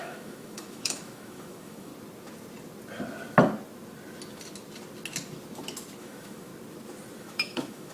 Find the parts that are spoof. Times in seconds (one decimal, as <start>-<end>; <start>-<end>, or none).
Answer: 0.0-1.9; 6.0-6.5; 7.2-7.9